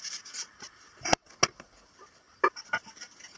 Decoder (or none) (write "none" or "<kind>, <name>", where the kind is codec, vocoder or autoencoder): none